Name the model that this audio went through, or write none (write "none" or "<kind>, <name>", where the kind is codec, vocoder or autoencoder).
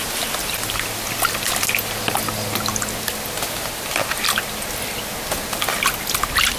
none